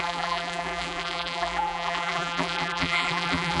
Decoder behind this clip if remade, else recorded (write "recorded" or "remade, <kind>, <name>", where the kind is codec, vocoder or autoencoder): remade, vocoder, BigVGAN v2